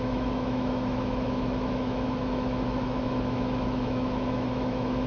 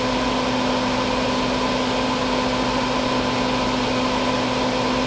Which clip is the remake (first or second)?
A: first